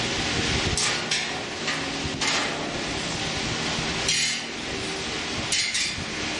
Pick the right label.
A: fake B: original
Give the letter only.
B